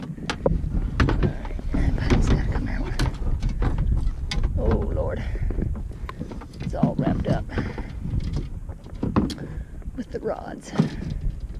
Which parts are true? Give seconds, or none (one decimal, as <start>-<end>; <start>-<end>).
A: 0.0-11.6